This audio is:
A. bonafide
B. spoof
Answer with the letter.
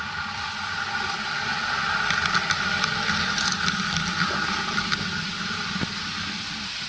A